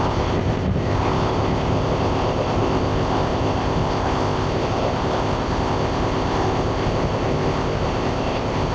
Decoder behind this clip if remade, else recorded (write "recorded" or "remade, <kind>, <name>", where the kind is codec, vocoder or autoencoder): remade, codec, ZipCodec